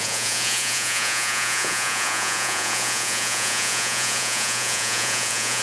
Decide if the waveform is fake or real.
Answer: fake